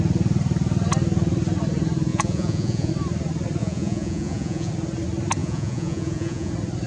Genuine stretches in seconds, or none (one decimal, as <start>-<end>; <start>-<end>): 0.0-2.1; 2.9-3.6; 4.7-5.4; 6.5-6.9